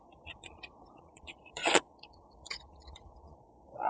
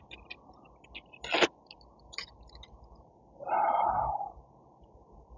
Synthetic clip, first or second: first